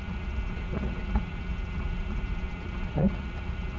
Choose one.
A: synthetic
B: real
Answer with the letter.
A